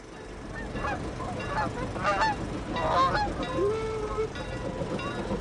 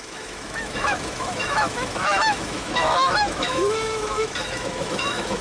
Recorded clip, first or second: first